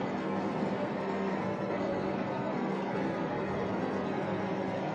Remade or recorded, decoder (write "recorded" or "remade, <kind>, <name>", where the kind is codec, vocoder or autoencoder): remade, codec, SNAC